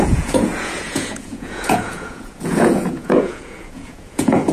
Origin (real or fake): fake